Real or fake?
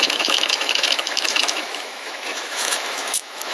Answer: fake